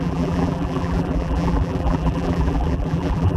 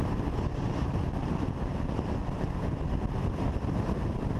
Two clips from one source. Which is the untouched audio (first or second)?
second